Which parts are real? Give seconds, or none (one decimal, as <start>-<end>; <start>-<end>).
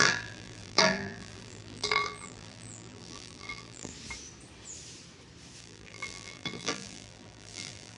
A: 3.9-5.6